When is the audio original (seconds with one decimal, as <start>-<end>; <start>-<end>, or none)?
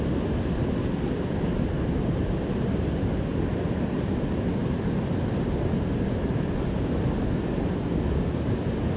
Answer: 0.0-9.0